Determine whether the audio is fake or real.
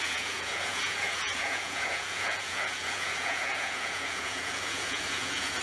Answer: fake